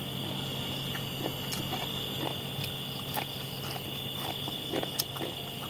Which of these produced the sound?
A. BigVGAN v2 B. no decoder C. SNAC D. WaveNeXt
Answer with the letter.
B